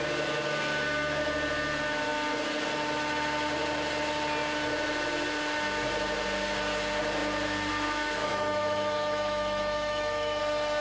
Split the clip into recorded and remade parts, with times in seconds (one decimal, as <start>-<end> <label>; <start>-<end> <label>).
0.0-8.2 recorded; 8.2-10.4 remade; 10.4-10.8 recorded